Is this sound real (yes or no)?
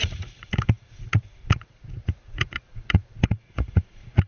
no